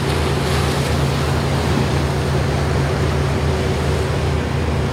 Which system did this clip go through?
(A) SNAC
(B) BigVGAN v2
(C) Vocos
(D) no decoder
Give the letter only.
D